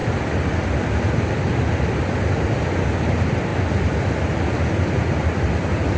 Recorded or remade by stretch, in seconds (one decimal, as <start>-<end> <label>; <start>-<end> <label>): 0.0-6.0 recorded